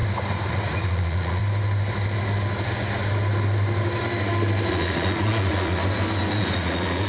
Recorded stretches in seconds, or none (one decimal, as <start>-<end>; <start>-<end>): 0.0-0.5; 1.4-4.7; 5.8-6.3